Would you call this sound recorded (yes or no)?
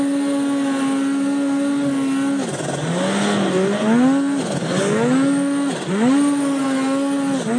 yes